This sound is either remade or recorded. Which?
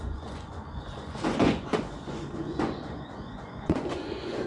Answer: remade